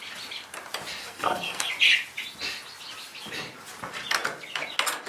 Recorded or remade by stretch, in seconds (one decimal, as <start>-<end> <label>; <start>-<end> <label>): 0.0-1.0 recorded; 1.0-1.7 remade; 1.7-5.1 recorded